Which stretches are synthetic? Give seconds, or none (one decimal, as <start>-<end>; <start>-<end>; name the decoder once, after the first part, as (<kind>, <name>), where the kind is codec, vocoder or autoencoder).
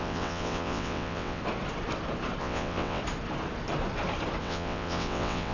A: 0.0-1.4 (vocoder, WaveNeXt); 2.4-3.0; 4.4-5.5